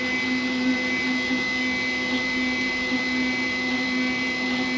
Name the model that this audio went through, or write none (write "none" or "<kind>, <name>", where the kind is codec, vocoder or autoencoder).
none